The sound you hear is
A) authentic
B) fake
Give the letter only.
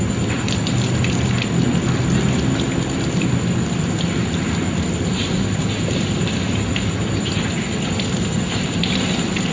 A